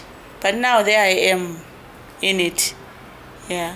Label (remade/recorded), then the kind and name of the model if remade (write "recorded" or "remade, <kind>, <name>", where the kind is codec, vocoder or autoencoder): recorded